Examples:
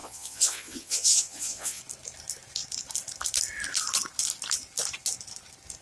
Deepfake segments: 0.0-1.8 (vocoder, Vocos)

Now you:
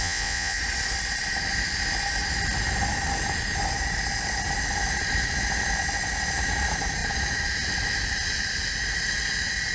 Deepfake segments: 0.0-0.6 (vocoder, Vocos)

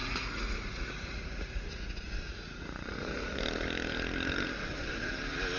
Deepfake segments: 0.0-3.4 (vocoder, Vocos); 4.6-5.1

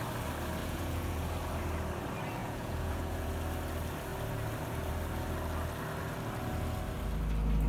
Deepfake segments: 0.6-1.2 (vocoder, Vocos); 2.4-3.3

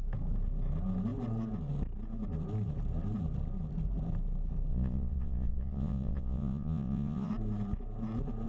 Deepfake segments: 4.7-7.3 (vocoder, Vocos)

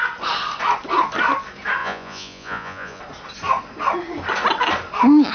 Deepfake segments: 1.8-3.0 (vocoder, Vocos)

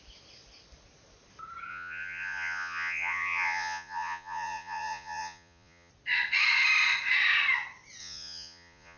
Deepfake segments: 1.7-5.9 (vocoder, Vocos); 8.0-9.0

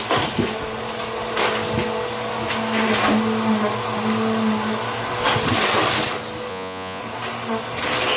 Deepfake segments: 6.5-7.0 (vocoder, Vocos)